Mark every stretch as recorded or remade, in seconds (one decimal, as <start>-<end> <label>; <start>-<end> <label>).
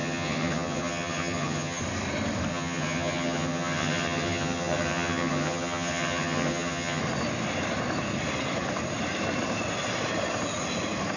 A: 0.0-1.8 remade; 1.8-2.5 recorded; 2.5-7.0 remade; 7.0-11.2 recorded